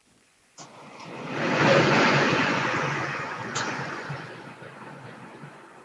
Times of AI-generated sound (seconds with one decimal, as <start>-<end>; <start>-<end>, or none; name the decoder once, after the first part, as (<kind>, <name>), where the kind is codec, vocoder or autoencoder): 0.0-5.8 (vocoder, Vocos)